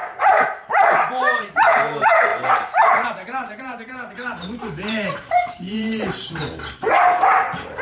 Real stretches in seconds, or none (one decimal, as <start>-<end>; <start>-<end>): 0.0-1.2; 6.4-7.0